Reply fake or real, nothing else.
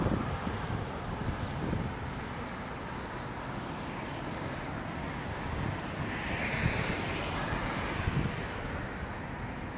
real